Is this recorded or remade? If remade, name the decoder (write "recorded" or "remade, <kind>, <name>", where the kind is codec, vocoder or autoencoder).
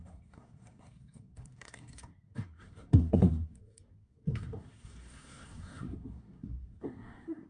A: remade, codec, SNAC